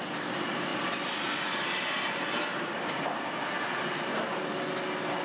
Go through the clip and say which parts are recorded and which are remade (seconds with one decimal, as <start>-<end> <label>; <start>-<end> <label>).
0.0-5.2 recorded